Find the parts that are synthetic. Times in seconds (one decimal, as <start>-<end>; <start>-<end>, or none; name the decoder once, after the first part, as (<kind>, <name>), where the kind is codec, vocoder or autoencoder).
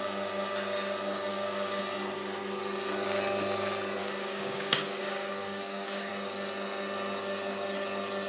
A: 1.3-1.8 (codec, DAC); 4.0-6.1